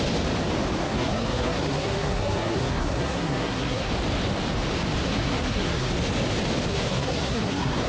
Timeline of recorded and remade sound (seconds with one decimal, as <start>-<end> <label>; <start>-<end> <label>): 0.0-0.8 recorded; 0.8-3.9 remade; 3.9-5.0 recorded; 5.0-5.9 remade; 5.9-6.7 recorded; 6.7-7.9 remade